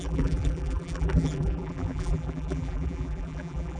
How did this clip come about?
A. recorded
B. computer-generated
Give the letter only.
B